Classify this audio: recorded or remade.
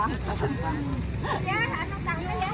recorded